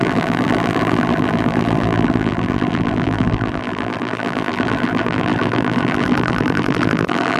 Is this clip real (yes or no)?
no